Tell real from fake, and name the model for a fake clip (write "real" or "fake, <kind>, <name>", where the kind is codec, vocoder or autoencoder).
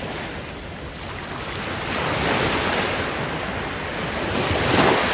real